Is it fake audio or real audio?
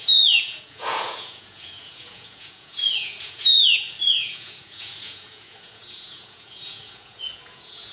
fake